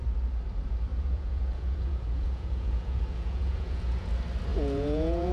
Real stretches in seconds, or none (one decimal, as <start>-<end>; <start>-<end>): 0.0-0.9; 4.1-4.5